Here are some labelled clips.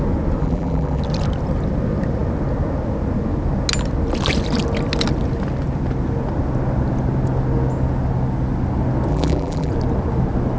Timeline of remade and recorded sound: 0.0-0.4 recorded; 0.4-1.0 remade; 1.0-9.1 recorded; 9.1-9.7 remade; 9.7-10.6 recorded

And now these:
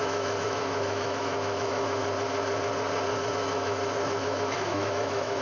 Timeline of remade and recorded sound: 0.0-2.0 remade; 2.0-3.3 recorded; 3.3-5.4 remade